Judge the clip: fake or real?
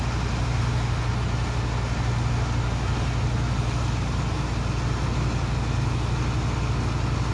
real